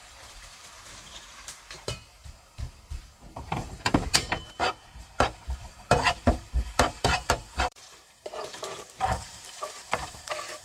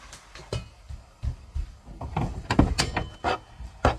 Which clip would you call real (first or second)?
second